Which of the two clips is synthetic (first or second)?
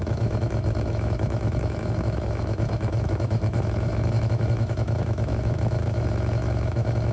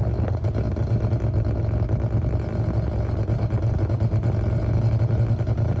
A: first